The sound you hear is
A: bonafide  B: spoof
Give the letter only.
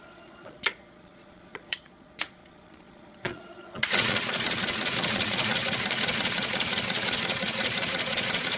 B